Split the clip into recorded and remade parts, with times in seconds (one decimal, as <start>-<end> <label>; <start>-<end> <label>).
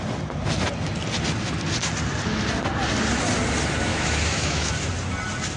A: 0.0-3.9 recorded; 3.9-4.7 remade; 4.7-5.6 recorded